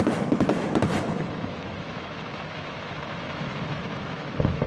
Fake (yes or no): yes